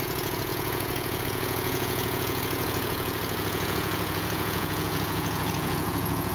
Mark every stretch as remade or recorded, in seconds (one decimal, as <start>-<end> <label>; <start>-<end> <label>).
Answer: 0.0-6.3 remade